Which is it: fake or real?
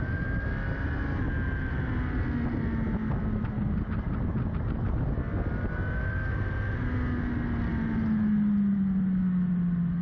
real